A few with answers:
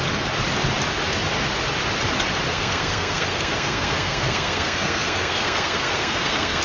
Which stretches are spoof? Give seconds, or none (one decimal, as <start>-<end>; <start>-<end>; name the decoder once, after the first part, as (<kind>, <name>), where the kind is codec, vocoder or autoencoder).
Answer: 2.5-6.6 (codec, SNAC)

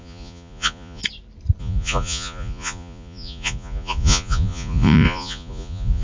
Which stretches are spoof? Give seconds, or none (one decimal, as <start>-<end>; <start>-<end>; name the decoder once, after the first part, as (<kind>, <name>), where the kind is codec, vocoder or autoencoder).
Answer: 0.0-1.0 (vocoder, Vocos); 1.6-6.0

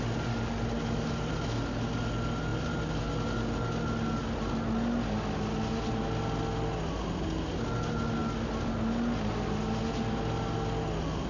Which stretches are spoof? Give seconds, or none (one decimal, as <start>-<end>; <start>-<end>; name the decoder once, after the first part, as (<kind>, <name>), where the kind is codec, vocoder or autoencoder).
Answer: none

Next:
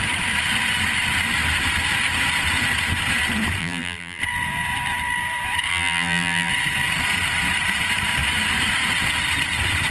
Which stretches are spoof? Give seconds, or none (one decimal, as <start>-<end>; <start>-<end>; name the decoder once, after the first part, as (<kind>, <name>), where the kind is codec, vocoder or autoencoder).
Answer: 3.6-4.2 (vocoder, BigVGAN v2); 5.7-6.5

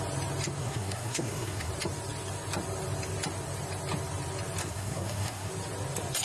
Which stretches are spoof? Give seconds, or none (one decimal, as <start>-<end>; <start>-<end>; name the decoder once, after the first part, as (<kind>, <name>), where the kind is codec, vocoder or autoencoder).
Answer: 0.6-1.7 (codec, SNAC); 4.6-5.5

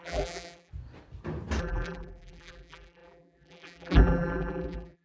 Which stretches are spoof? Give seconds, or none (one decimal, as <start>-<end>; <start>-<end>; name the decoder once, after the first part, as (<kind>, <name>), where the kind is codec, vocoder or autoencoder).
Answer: 0.0-0.7 (vocoder, BigVGAN v2); 1.6-5.0

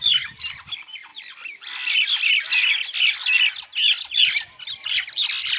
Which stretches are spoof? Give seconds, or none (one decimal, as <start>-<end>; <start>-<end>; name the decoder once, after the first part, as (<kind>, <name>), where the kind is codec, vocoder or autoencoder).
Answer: none

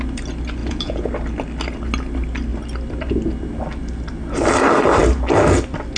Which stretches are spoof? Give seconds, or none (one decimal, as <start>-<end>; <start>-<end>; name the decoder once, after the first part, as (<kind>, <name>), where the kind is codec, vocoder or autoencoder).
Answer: 0.6-1.1 (vocoder, Vocos)